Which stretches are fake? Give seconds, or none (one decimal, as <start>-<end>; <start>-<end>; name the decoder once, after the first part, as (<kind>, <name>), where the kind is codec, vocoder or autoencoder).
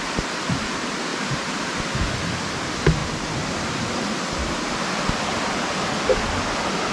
1.1-1.8 (vocoder, BigVGAN v2)